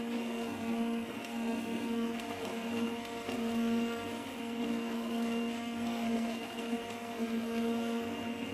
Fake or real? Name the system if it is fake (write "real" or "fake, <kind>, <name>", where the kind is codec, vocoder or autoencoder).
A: fake, codec, SNAC